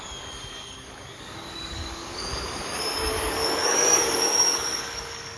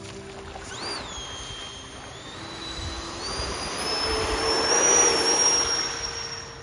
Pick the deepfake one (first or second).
first